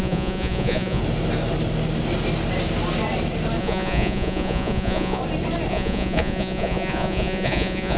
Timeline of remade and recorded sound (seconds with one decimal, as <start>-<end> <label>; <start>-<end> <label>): 0.0-1.0 remade; 1.0-3.6 recorded; 3.6-5.2 remade; 5.2-5.7 recorded; 5.7-8.0 remade